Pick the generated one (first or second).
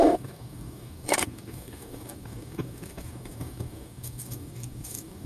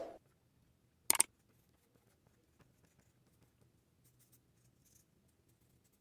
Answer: first